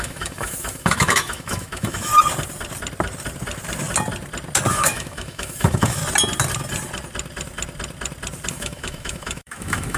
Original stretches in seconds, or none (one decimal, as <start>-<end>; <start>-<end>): 2.1-4.7; 6.0-8.5